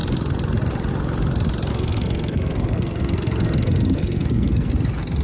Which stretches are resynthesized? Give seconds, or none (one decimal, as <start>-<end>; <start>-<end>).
1.7-4.7